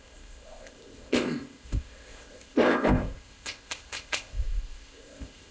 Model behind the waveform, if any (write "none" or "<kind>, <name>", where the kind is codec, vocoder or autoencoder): codec, ZipCodec